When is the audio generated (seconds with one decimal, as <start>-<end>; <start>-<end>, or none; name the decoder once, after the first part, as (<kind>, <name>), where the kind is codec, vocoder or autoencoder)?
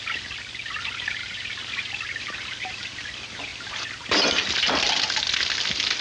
0.0-6.0 (vocoder, BigVGAN v2)